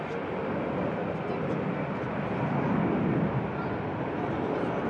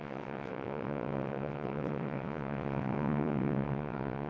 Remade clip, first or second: second